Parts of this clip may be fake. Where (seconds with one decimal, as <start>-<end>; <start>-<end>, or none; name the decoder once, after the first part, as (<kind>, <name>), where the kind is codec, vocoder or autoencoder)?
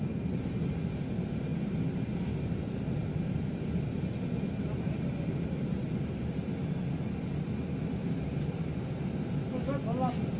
none